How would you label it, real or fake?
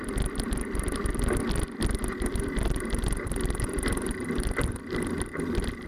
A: real